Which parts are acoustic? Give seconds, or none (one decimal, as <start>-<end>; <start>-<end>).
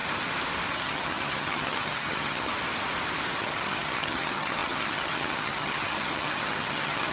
0.0-0.7; 2.5-3.4